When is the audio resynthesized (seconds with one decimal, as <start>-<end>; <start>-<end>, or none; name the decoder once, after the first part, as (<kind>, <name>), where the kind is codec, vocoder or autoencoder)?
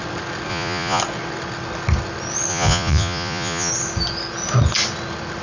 0.5-1.0 (vocoder, Vocos); 2.5-3.7